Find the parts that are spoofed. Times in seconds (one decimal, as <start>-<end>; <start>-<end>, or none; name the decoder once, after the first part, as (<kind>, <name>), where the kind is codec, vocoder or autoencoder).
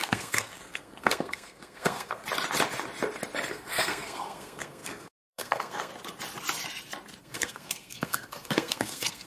0.0-2.2 (codec, SNAC); 3.5-5.9; 7.2-9.3